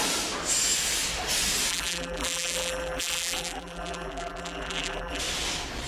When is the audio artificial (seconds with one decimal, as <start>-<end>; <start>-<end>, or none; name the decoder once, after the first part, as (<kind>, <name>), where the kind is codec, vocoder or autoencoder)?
1.7-5.2 (vocoder, BigVGAN v2)